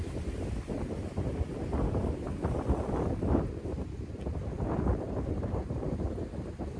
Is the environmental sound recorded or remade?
recorded